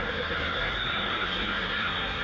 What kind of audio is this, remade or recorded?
remade